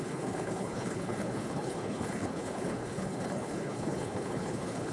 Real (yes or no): no